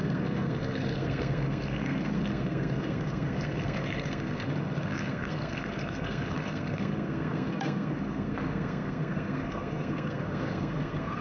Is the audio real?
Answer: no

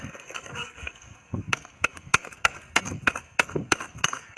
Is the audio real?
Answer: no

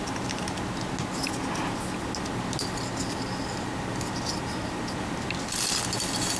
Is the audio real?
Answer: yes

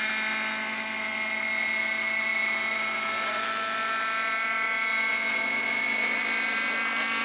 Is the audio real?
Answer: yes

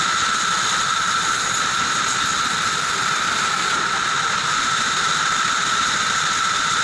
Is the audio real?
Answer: yes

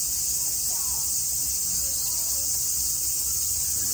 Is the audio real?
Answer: yes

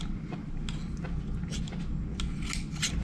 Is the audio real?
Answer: yes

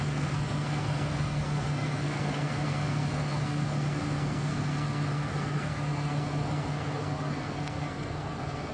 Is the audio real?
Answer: no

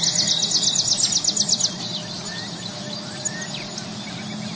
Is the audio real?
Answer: yes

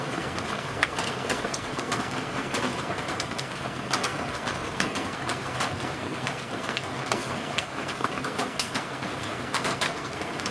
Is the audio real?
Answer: no